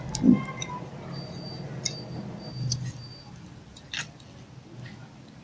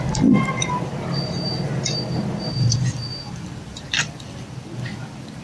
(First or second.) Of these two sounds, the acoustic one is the first